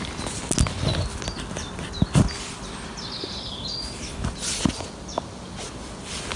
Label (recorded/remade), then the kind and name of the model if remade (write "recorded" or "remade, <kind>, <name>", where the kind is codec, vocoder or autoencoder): recorded